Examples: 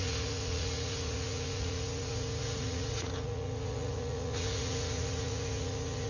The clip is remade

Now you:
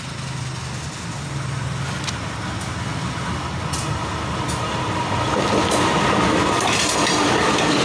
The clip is recorded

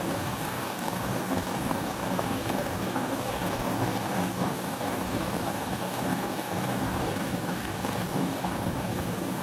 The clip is remade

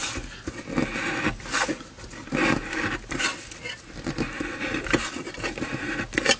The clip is recorded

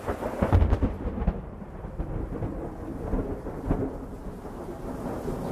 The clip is recorded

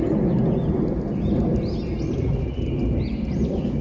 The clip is recorded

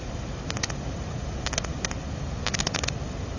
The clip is recorded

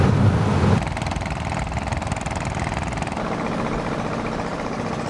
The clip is recorded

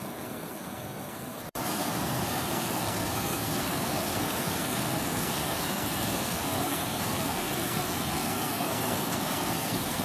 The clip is remade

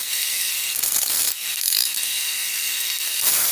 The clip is remade